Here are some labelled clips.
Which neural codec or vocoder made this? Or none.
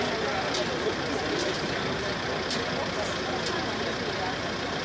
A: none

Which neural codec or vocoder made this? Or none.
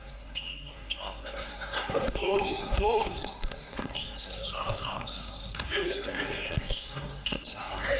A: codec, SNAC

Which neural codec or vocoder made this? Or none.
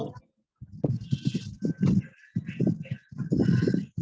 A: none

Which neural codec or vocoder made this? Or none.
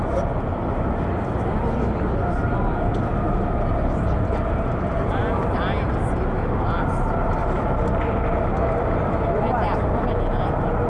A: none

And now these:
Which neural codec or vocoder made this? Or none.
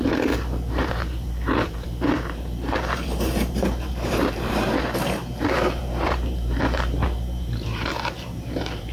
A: vocoder, BigVGAN v2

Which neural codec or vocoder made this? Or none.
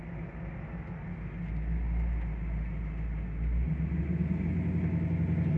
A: none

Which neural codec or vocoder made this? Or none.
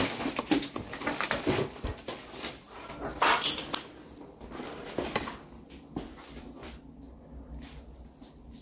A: none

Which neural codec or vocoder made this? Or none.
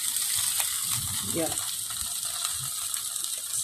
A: none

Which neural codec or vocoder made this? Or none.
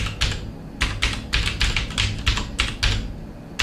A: none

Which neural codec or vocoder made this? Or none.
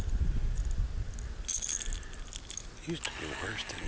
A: none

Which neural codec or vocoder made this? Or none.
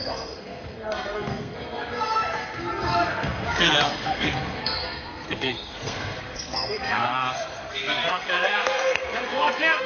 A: codec, SNAC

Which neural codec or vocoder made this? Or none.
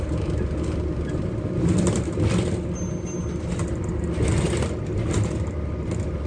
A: none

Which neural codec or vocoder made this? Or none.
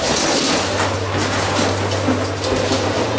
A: none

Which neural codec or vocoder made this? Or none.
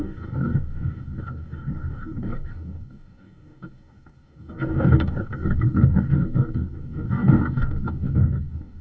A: codec, DAC